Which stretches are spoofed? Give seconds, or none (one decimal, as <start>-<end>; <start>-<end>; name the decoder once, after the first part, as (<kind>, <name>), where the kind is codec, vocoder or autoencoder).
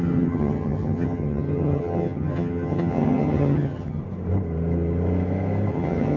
0.0-4.0 (vocoder, HiFi-GAN); 5.7-6.2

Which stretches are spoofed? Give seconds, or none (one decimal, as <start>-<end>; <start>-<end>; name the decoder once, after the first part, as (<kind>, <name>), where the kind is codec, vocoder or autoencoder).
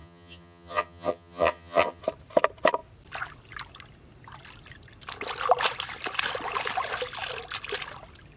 0.0-2.0 (vocoder, HiFi-GAN)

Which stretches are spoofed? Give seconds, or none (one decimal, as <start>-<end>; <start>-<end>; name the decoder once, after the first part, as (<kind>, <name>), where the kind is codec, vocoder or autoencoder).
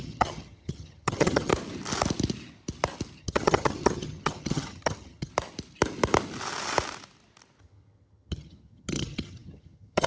0.0-1.5 (vocoder, HiFi-GAN); 3.2-5.3; 7.6-10.1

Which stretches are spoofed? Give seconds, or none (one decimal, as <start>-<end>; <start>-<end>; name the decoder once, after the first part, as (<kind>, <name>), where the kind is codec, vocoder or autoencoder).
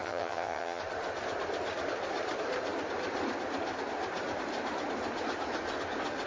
0.0-0.8 (vocoder, HiFi-GAN)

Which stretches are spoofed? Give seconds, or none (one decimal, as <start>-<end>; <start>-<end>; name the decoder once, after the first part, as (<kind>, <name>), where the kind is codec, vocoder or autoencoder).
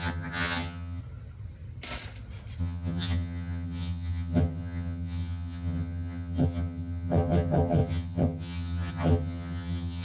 0.0-1.0 (vocoder, HiFi-GAN); 2.6-10.0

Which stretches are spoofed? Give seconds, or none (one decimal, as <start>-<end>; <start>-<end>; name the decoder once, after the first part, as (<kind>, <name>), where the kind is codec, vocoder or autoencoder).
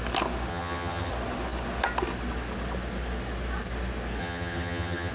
0.5-1.1 (vocoder, HiFi-GAN); 4.2-5.1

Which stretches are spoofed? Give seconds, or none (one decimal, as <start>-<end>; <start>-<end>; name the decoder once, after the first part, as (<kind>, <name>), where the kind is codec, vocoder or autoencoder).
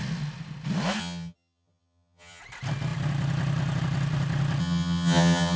1.0-2.4 (vocoder, HiFi-GAN); 4.6-5.6